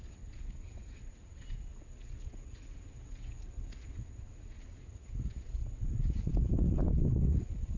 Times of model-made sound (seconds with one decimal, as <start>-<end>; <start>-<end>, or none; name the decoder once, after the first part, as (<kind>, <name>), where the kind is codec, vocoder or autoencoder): 0.0-7.8 (vocoder, WaveNeXt)